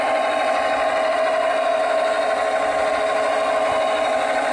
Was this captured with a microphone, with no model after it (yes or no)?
yes